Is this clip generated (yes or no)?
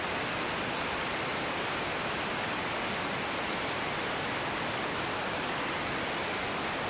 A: no